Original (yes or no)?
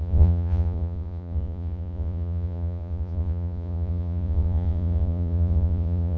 no